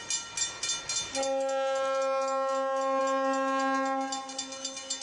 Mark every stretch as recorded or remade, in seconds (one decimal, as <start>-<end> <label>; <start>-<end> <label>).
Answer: 0.0-5.0 recorded